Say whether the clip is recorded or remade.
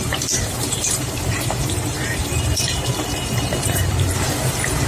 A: remade